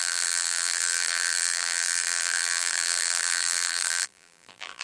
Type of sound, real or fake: fake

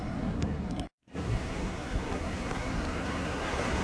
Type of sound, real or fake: fake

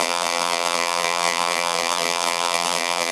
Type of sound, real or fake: fake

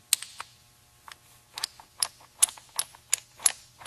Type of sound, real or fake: real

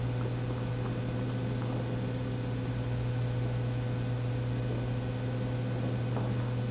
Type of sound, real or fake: real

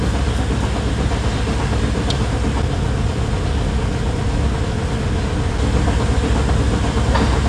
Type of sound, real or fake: real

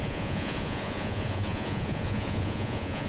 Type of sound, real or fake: fake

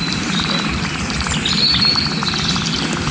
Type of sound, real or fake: fake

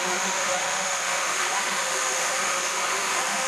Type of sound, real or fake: fake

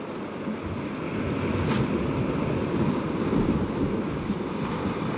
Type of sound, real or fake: real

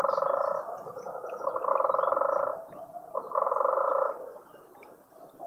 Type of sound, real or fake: real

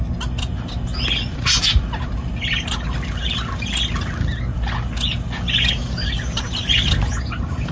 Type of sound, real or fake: real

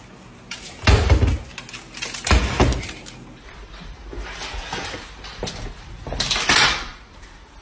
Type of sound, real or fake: real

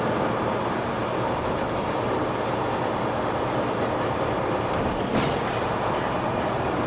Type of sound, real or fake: fake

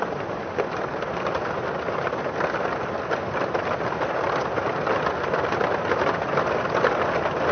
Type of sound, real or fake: real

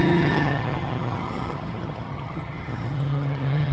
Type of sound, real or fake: fake